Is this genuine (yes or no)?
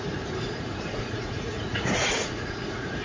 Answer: no